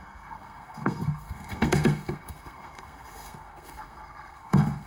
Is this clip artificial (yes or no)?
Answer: yes